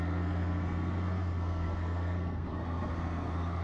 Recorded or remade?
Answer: remade